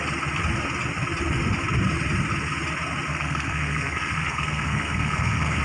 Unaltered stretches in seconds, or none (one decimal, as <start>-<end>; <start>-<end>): 0.0-3.1